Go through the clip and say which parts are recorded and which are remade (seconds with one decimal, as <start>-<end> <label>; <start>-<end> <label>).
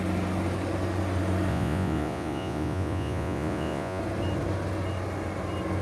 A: 0.0-1.5 recorded; 1.5-4.0 remade; 4.0-5.8 recorded